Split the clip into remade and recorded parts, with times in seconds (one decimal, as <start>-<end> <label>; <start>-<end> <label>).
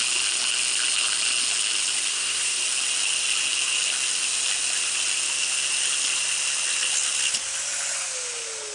0.0-2.1 recorded; 2.1-2.6 remade; 2.6-8.7 recorded